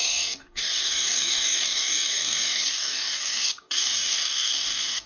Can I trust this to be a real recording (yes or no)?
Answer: no